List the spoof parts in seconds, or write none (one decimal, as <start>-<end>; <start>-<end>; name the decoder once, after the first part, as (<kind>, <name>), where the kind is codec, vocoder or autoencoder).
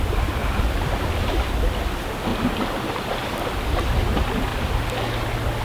0.4-1.5 (vocoder, BigVGAN v2); 4.5-5.0